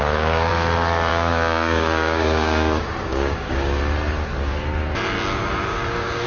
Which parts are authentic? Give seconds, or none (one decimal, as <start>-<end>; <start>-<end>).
0.5-1.1; 3.8-5.7